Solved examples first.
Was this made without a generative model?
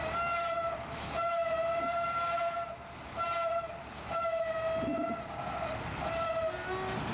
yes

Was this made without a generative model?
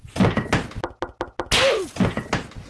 yes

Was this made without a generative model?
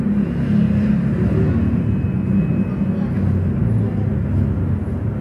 yes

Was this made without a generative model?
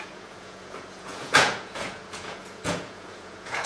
no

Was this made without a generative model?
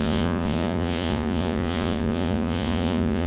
no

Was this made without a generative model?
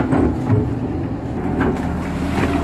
yes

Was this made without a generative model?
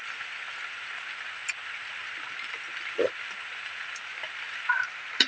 yes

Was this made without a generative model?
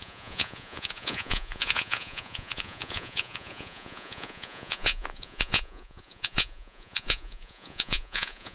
no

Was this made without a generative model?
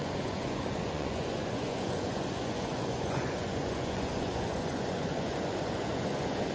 no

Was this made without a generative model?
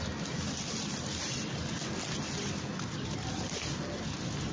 yes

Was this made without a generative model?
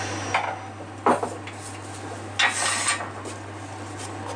yes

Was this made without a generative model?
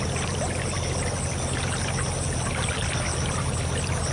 yes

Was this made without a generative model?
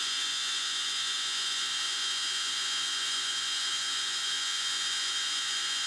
no